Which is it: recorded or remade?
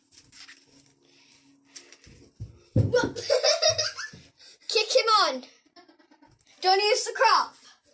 recorded